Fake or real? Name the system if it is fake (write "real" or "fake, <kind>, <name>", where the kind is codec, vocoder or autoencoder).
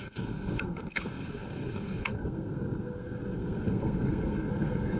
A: fake, codec, SNAC